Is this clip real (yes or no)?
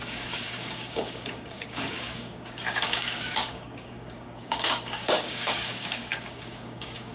no